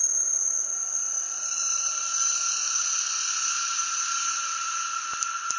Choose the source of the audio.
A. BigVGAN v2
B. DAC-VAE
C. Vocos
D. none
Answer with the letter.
A